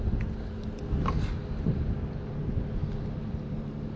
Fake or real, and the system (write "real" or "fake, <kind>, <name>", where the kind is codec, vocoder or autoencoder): real